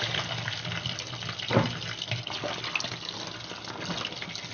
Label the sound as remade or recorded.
recorded